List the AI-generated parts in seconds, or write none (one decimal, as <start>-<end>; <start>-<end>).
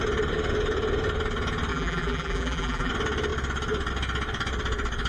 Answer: 1.7-2.9